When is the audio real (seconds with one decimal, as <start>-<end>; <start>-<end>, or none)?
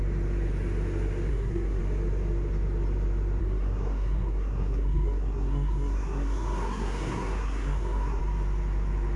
0.0-1.3; 1.8-3.4; 8.2-9.2